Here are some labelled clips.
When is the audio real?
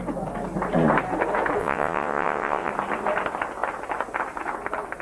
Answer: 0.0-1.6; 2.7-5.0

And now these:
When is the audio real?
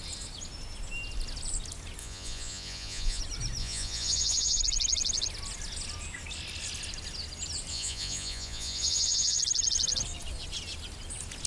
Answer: 0.0-2.0; 3.2-3.6; 4.6-7.7; 9.4-11.5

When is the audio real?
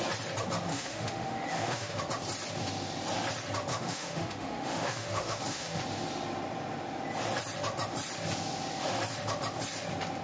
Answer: 0.0-0.7; 2.0-3.7; 5.8-10.2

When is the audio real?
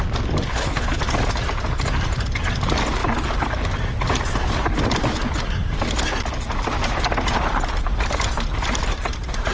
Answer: 0.0-0.5; 1.0-9.5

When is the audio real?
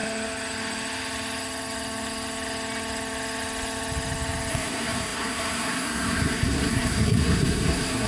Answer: 0.0-4.5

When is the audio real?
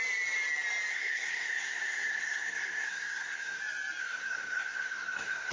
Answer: 0.0-0.9; 3.6-4.0